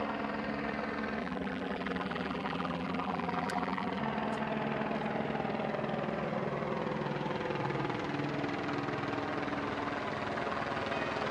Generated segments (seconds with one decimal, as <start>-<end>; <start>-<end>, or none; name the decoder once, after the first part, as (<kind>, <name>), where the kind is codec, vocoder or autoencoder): 1.2-4.0 (vocoder, BigVGAN v2)